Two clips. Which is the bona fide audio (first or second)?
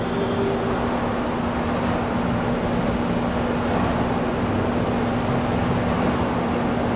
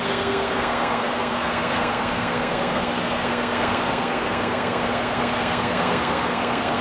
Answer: first